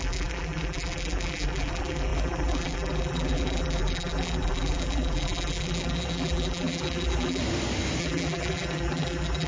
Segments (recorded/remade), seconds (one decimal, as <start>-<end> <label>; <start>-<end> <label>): 0.0-7.4 remade; 7.4-8.0 recorded; 8.0-9.5 remade